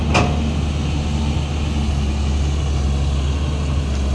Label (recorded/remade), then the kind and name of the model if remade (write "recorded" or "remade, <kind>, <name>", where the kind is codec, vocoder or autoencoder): recorded